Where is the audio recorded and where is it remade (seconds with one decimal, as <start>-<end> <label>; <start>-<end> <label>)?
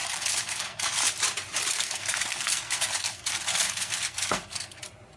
0.0-1.0 remade; 1.0-1.7 recorded; 1.7-4.8 remade; 4.8-5.2 recorded